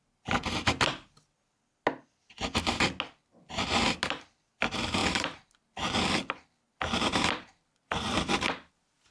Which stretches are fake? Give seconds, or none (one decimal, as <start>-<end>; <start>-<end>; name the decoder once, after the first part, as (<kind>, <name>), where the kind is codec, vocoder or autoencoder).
none